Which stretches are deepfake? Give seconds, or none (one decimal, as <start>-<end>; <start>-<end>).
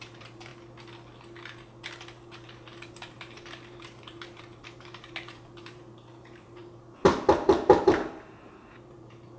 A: 0.0-0.5; 2.9-9.4